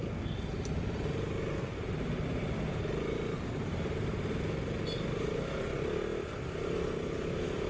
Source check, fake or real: real